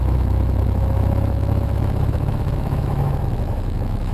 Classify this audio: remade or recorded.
remade